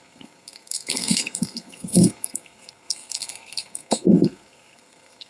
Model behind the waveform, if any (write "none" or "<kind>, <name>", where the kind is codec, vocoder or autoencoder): codec, SNAC